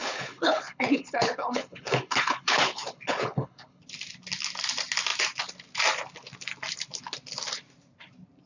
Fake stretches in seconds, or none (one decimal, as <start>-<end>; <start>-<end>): 0.0-3.8